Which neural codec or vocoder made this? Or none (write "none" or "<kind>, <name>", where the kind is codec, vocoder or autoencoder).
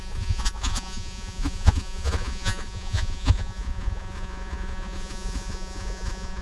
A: vocoder, Vocos